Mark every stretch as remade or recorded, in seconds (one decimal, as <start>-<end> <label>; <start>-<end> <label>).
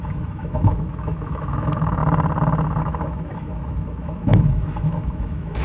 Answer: 0.0-2.0 remade; 2.0-2.8 recorded; 2.8-5.6 remade